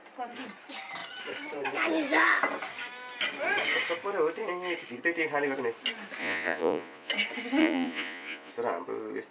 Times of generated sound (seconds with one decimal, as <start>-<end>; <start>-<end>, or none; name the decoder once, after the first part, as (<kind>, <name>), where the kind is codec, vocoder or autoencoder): 6.2-7.1 (vocoder, Vocos); 7.6-8.5